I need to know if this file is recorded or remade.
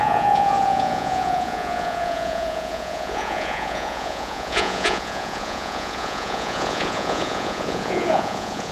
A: remade